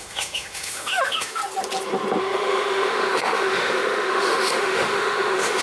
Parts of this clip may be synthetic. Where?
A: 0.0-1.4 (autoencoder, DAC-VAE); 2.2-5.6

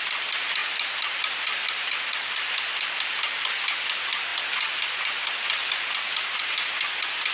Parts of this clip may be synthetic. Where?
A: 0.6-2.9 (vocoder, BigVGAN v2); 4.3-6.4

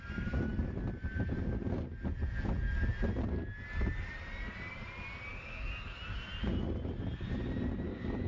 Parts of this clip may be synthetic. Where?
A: 5.3-6.0 (codec, DAC)

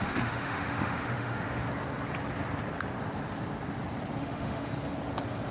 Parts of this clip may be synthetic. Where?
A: 0.0-1.6 (autoencoder, DAC-VAE); 4.2-4.7

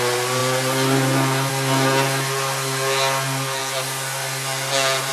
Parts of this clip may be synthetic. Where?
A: none